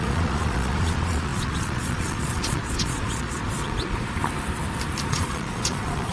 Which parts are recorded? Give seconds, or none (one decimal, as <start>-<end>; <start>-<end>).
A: 4.2-5.1